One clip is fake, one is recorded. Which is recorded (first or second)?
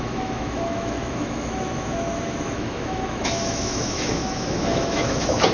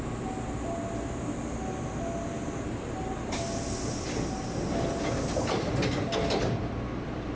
second